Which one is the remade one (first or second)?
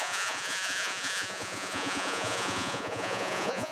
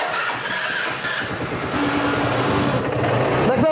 first